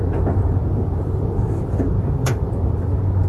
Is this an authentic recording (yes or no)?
no